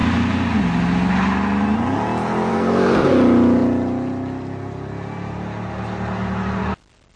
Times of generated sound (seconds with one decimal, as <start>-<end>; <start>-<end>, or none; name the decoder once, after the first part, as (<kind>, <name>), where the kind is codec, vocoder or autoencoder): 2.5-3.1 (codec, SNAC)